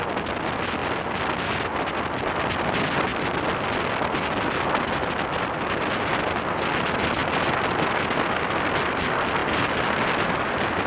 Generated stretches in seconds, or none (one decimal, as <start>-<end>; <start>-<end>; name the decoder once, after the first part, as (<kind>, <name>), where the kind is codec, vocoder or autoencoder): none